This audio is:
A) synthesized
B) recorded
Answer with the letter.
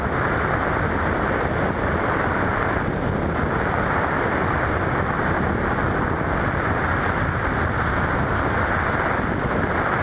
B